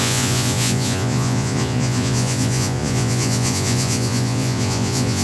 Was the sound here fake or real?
fake